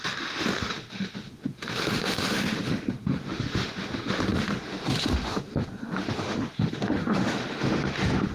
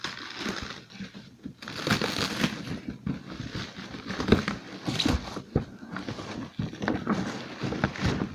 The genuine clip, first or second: second